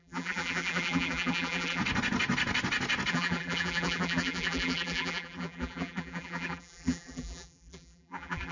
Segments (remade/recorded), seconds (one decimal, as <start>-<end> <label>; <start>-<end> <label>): 0.0-1.8 remade; 1.8-3.1 recorded; 3.1-8.5 remade